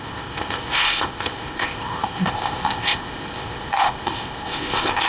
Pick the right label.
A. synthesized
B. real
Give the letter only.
A